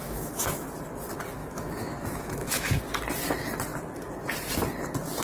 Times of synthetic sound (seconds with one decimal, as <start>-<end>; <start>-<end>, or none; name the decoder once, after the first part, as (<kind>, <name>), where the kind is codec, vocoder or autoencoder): 0.0-0.7 (autoencoder, DAC-VAE); 1.4-2.8